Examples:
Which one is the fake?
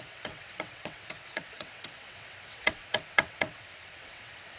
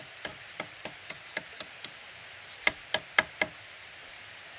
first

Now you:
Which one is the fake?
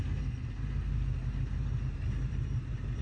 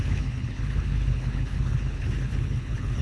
second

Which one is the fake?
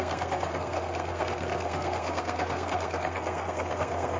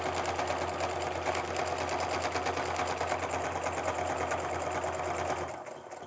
first